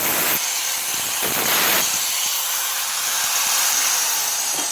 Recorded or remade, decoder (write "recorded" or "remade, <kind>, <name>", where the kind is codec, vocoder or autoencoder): recorded